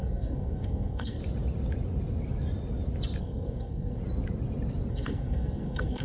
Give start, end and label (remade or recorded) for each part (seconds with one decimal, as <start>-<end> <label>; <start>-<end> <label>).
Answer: 0.0-1.2 remade; 1.2-3.2 recorded; 3.2-4.0 remade; 4.0-4.9 recorded; 4.9-6.0 remade